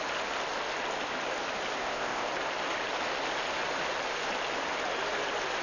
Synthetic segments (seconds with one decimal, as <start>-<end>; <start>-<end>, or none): 1.8-2.3